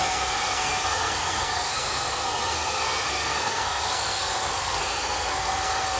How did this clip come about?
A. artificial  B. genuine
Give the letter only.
A